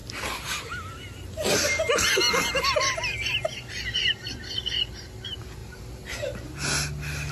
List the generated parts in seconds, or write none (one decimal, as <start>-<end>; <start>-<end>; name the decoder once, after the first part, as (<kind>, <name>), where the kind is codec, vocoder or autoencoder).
none